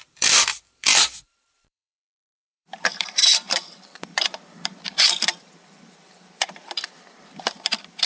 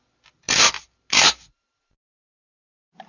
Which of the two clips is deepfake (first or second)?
first